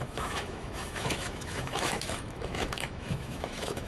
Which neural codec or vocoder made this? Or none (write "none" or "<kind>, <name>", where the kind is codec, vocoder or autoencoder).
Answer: autoencoder, DAC-VAE